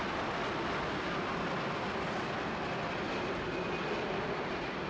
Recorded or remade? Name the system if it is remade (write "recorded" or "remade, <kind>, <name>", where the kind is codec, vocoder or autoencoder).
recorded